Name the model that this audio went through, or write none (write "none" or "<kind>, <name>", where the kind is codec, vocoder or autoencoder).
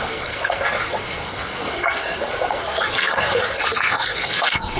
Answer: codec, SNAC